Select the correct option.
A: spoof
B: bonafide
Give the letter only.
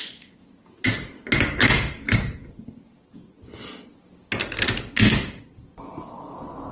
B